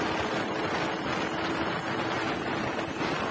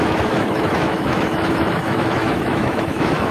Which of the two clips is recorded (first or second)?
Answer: first